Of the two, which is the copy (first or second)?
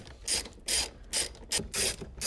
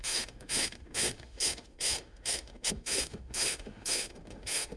second